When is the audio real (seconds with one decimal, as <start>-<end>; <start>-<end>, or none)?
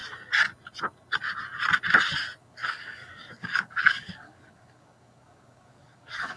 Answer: 0.0-2.4